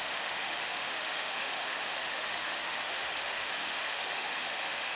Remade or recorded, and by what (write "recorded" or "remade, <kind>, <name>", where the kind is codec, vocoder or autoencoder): remade, autoencoder, DAC-VAE